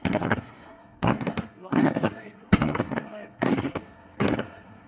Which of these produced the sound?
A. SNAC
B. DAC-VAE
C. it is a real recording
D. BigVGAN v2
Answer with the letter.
A